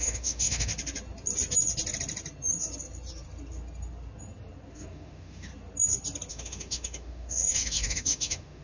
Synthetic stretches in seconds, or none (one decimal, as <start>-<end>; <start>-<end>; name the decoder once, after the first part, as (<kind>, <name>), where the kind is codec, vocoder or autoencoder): 0.0-0.7 (autoencoder, DAC-VAE); 4.7-5.5; 6.3-8.6